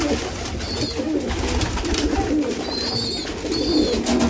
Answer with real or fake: real